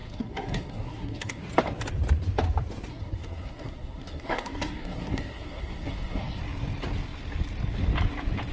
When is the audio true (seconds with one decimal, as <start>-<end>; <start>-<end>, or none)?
1.4-2.9; 6.4-8.5

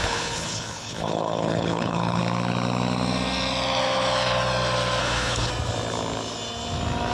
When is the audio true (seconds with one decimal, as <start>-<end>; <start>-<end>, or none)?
2.2-5.0; 5.5-7.1

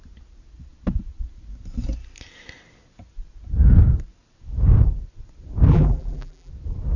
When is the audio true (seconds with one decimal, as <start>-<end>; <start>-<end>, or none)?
0.0-5.7; 6.5-7.0

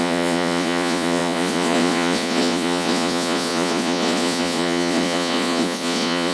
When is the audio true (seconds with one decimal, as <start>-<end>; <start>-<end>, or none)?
none